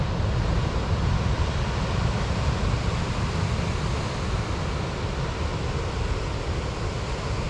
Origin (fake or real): real